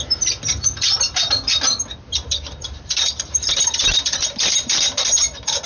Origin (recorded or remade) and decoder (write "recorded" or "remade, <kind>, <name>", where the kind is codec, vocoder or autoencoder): remade, vocoder, BigVGAN v2